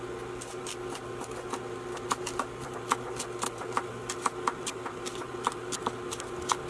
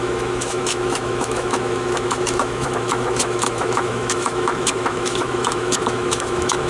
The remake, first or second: second